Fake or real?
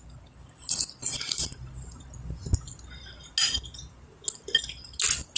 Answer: real